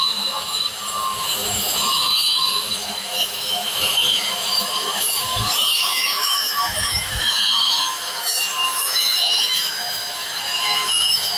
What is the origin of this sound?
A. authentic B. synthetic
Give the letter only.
B